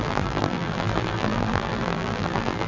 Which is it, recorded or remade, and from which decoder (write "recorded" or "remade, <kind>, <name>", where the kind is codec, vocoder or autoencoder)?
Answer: remade, vocoder, BigVGAN v2